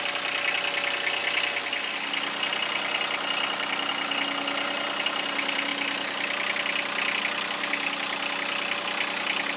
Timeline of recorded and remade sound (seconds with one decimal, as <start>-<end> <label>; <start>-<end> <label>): 0.0-9.6 recorded